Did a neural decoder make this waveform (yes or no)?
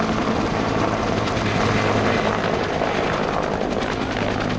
no